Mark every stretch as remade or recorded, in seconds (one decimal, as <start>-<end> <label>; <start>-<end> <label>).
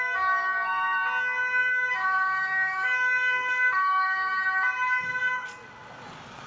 0.0-1.0 remade; 1.0-1.9 recorded; 1.9-4.3 remade; 4.3-5.0 recorded; 5.0-5.6 remade; 5.6-6.5 recorded